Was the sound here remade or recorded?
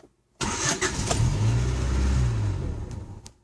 recorded